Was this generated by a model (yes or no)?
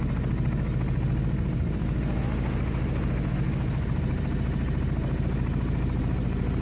no